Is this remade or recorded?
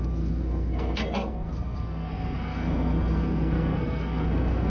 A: remade